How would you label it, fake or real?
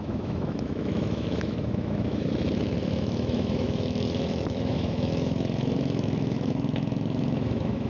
fake